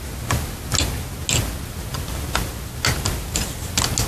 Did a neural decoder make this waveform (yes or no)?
no